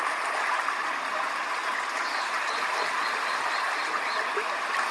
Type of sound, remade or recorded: recorded